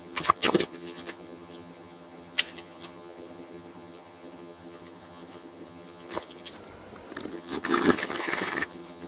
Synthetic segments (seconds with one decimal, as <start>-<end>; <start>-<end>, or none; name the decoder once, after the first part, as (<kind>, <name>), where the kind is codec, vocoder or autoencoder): 0.0-6.5 (vocoder, HiFi-GAN); 7.3-9.1